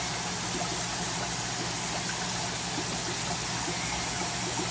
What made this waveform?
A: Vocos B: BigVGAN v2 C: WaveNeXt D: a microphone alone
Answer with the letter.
D